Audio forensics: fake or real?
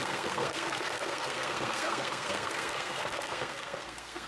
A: fake